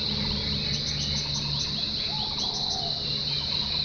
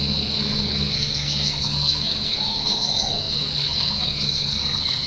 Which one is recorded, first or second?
first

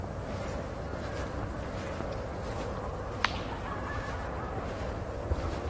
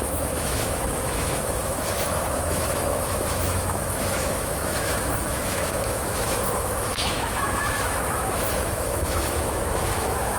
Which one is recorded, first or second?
first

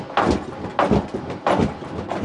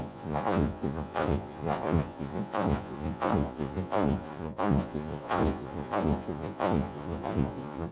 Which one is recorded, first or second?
first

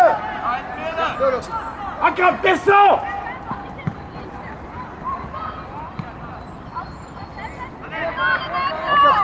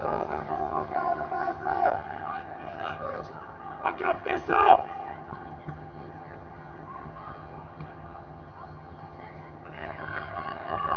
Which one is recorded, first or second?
first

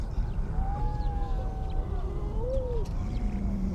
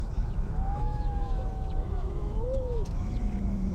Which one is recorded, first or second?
first